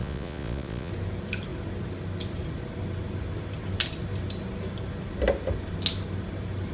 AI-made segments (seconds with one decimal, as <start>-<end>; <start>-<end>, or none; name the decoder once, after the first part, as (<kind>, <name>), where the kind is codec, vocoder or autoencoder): 0.0-0.9 (vocoder, Vocos)